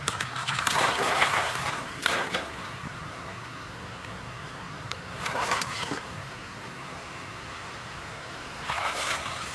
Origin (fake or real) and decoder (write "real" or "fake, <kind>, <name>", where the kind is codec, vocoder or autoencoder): fake, codec, SNAC